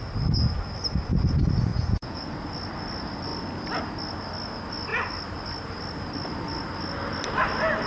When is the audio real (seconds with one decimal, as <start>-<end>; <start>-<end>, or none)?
0.0-1.7; 2.2-7.9